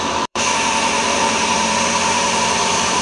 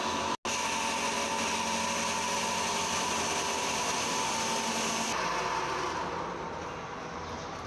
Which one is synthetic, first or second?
first